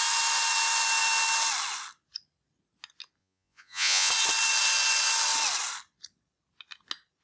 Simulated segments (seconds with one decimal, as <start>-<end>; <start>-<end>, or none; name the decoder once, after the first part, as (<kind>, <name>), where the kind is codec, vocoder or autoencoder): 3.2-4.1 (vocoder, Vocos)